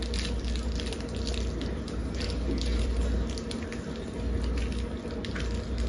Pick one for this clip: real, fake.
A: real